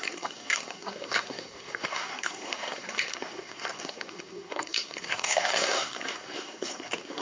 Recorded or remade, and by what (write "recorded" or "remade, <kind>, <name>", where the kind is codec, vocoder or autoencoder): remade, codec, SNAC